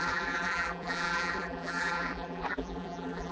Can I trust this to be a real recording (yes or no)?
no